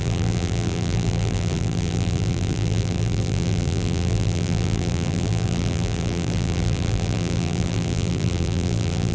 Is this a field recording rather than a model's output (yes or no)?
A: no